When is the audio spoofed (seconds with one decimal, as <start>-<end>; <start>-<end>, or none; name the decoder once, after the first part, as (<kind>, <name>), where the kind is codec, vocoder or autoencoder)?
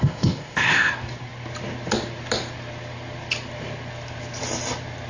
0.0-0.9 (codec, ZipCodec)